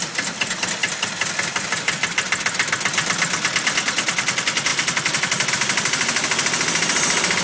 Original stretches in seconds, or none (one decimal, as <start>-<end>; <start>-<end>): 0.0-7.4